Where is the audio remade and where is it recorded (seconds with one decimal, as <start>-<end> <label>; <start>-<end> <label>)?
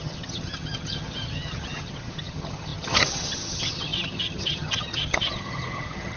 0.0-6.2 remade